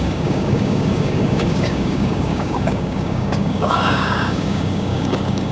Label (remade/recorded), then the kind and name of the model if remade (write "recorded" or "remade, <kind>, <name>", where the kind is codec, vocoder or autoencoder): remade, codec, DAC